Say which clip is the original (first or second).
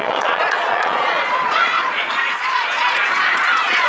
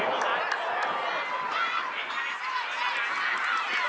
second